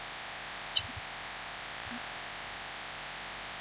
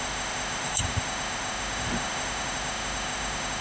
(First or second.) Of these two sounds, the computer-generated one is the second